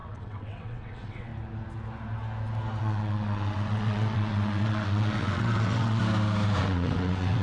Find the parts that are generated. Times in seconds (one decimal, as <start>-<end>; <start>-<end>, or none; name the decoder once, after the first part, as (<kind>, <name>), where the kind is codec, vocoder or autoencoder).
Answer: 0.0-1.3 (vocoder, WaveNeXt); 2.8-6.0; 6.6-7.4